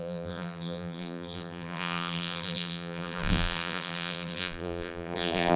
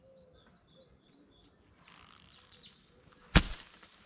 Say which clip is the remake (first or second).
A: first